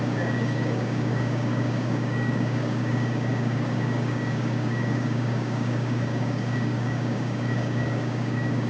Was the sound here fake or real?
fake